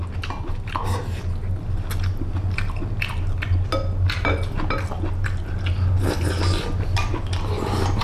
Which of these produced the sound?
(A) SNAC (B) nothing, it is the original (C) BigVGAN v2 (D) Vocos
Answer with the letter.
B